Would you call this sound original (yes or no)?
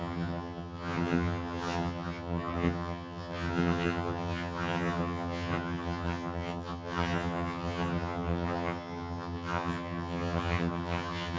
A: no